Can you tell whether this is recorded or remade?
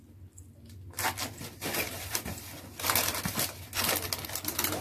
recorded